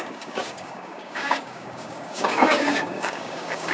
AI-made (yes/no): yes